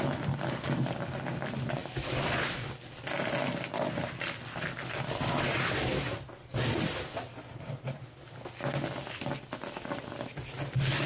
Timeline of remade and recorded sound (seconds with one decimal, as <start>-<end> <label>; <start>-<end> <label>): 0.0-11.1 recorded